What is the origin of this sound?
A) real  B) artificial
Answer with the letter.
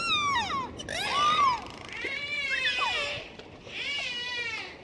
A